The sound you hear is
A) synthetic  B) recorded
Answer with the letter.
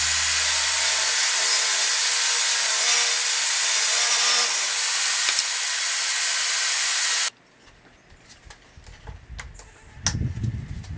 B